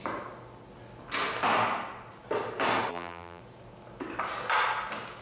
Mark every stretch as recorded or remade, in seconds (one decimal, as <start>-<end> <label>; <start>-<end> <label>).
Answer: 0.0-2.9 recorded; 2.9-3.4 remade; 3.4-5.2 recorded